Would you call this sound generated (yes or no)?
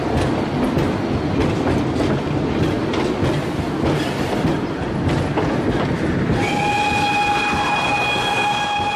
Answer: no